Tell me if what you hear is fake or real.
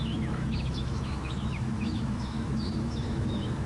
fake